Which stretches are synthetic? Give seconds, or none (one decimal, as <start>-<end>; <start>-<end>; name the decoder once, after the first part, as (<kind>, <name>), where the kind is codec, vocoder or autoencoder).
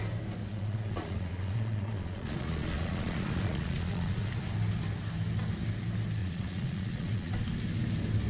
0.5-4.3 (vocoder, Vocos); 6.2-7.3